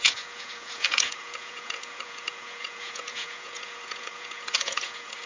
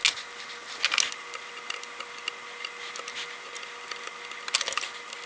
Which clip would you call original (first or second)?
second